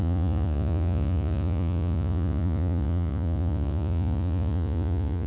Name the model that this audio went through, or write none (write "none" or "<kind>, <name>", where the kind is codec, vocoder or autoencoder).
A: vocoder, Vocos